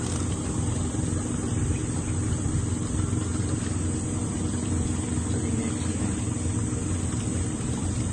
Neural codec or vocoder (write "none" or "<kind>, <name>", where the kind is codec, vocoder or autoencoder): none